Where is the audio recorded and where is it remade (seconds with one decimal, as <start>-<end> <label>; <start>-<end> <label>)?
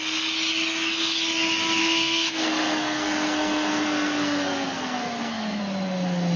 0.0-1.8 recorded; 1.8-5.6 remade; 5.6-6.4 recorded